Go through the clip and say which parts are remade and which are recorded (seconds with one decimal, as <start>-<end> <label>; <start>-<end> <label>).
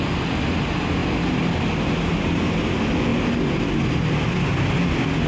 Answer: 0.0-5.3 recorded